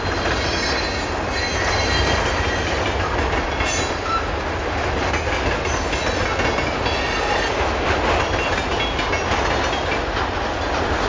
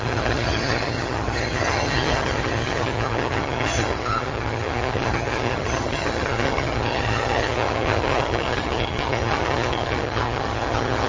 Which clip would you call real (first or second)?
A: first